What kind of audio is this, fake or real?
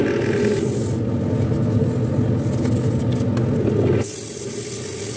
real